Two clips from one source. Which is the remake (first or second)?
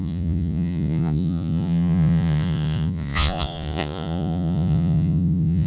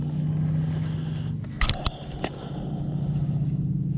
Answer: first